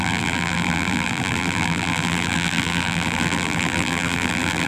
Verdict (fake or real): fake